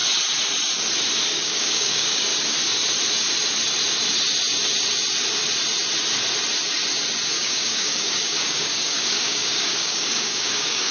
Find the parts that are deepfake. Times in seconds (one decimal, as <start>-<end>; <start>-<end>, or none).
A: 1.3-2.3; 7.3-10.9